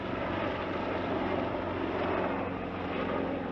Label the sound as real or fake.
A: real